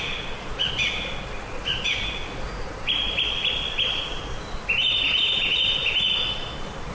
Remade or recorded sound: recorded